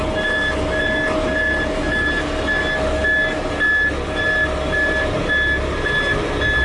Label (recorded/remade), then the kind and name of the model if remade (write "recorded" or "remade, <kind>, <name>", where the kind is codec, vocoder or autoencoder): recorded